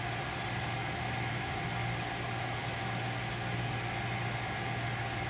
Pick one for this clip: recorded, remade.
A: recorded